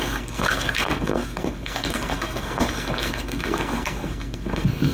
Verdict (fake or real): fake